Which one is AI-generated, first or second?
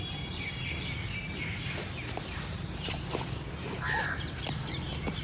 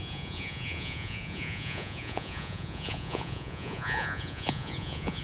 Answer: second